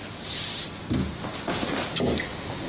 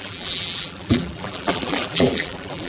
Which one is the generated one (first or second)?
second